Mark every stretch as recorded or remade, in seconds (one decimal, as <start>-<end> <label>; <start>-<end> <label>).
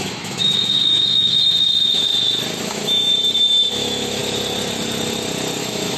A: 0.0-2.1 remade; 2.1-2.6 recorded; 2.6-3.1 remade; 3.1-3.7 recorded; 3.7-4.2 remade; 4.2-5.6 recorded; 5.6-6.0 remade